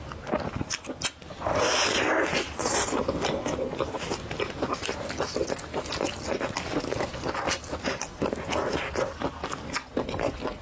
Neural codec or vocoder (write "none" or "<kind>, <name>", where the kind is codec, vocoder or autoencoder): none